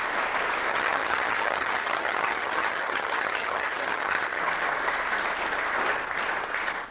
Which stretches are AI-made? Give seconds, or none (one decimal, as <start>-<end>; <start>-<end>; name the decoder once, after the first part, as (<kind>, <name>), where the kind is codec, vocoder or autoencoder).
0.7-4.4 (vocoder, HiFi-GAN)